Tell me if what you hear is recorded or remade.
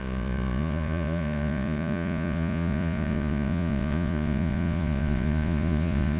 remade